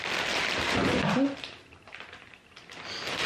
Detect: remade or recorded recorded